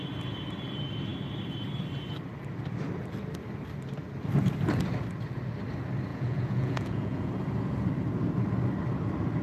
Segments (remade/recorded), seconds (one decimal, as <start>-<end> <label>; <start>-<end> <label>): 0.0-6.1 recorded; 6.1-7.3 remade; 7.3-9.4 recorded